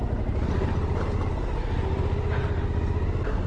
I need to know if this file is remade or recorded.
recorded